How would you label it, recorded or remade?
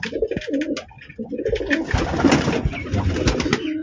recorded